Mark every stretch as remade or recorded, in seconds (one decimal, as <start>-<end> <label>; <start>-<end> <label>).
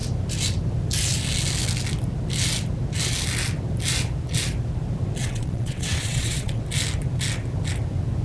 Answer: 0.0-5.2 recorded; 5.2-6.6 remade; 6.6-8.2 recorded